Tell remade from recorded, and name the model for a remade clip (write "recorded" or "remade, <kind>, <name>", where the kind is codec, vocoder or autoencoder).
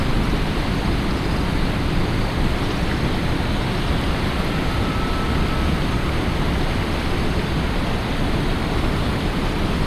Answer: recorded